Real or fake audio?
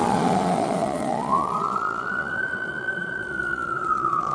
fake